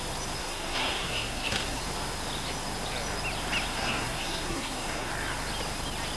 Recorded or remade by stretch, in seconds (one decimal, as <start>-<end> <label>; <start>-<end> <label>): 0.0-0.4 recorded; 0.4-1.8 remade; 1.8-3.7 recorded; 3.7-5.1 remade; 5.1-6.2 recorded